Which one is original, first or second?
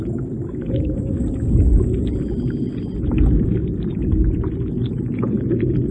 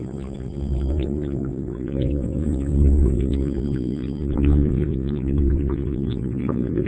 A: first